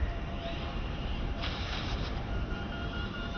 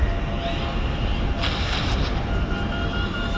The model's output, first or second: first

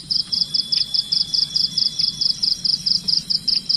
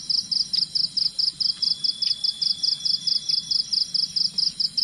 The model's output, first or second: first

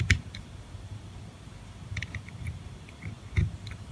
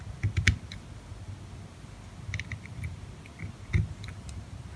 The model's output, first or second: first